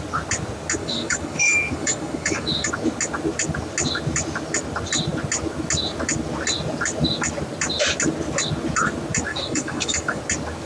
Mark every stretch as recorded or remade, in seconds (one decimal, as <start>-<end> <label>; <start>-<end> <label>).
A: 0.0-0.8 recorded; 0.8-2.7 remade; 2.7-9.3 recorded; 9.3-10.2 remade; 10.2-10.7 recorded